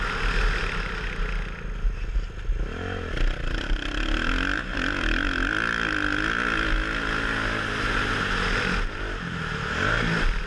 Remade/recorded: recorded